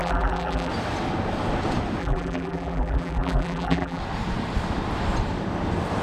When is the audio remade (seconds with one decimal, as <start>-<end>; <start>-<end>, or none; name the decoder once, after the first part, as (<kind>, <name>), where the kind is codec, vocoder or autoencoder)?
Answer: 0.0-0.7 (vocoder, BigVGAN v2); 2.0-4.0